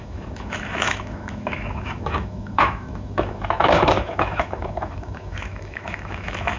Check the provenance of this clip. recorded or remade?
remade